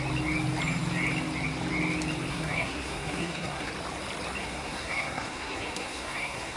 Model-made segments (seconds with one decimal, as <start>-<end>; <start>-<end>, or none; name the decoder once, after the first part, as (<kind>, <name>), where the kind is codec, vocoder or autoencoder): 2.3-3.7 (codec, SNAC); 4.4-6.6